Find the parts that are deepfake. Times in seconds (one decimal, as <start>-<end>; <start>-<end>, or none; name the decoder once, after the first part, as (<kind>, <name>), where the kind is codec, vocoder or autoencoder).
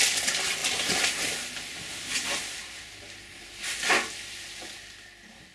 none